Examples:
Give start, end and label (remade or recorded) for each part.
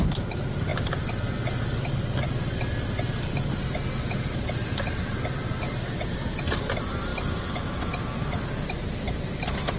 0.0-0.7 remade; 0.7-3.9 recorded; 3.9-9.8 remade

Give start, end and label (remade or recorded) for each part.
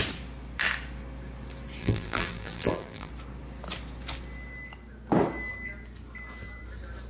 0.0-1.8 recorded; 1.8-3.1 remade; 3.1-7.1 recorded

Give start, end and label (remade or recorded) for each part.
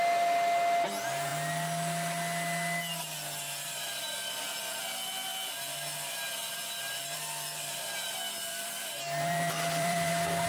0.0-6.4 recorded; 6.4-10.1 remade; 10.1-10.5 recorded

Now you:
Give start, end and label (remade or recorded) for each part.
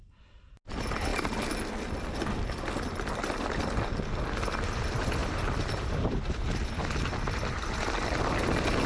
0.0-5.2 recorded; 5.2-6.9 remade; 6.9-8.9 recorded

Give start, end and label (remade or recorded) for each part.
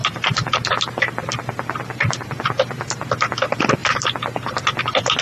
0.0-2.4 remade; 2.4-3.8 recorded; 3.8-4.8 remade; 4.8-5.2 recorded